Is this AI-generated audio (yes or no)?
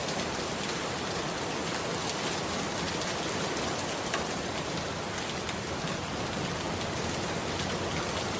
no